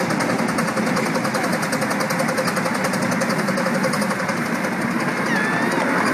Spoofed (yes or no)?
no